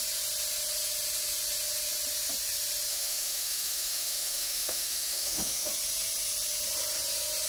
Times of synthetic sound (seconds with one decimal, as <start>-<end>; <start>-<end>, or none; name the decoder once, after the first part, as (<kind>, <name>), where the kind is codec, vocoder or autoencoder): 2.9-5.7 (autoencoder, DAC-VAE)